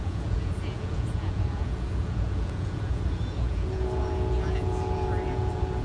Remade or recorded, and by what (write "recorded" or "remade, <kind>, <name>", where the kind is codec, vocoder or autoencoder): remade, vocoder, Vocos